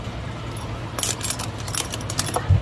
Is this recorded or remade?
recorded